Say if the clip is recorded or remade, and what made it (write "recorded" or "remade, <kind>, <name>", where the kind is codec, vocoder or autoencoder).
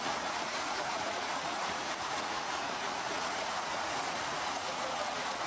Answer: remade, vocoder, Vocos